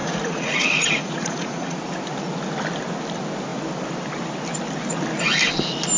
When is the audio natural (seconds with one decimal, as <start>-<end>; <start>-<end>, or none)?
1.8-6.0